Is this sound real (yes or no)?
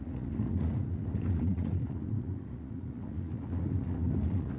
no